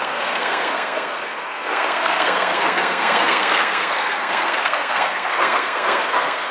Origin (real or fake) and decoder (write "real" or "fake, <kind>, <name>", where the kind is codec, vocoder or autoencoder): fake, codec, SNAC